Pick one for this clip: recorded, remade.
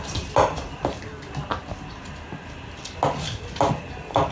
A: recorded